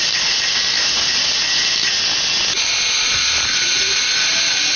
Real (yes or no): yes